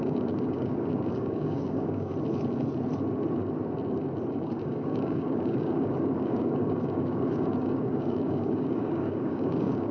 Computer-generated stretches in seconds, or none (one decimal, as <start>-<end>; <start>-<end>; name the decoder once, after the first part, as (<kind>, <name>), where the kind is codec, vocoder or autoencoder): 0.0-2.1 (codec, DAC); 4.3-9.9